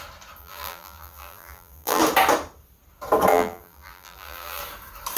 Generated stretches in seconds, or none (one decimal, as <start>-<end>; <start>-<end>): 0.4-2.0; 3.3-4.6